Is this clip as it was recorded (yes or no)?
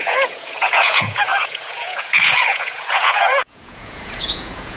no